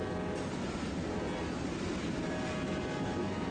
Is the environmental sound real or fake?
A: real